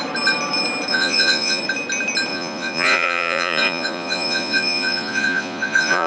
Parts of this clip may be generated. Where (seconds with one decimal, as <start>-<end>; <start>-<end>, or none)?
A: 0.9-1.6; 2.3-6.1